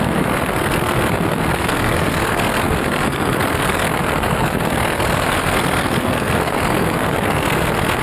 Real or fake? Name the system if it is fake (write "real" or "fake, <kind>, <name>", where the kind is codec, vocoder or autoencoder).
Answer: fake, codec, SNAC